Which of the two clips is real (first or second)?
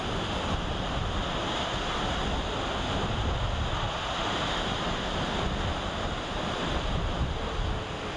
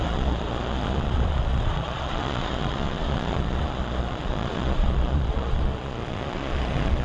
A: first